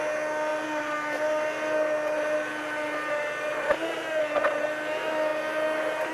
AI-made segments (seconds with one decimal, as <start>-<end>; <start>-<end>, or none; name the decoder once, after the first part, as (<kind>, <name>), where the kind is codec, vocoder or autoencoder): none